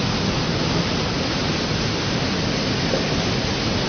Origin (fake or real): real